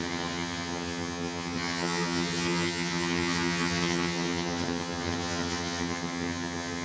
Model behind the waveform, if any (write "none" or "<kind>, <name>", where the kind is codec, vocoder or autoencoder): vocoder, HiFi-GAN